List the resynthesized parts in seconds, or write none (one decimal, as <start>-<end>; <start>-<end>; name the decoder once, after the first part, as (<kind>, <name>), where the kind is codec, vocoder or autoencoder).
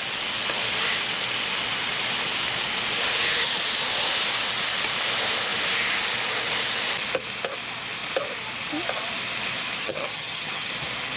9.8-10.7 (vocoder, HiFi-GAN)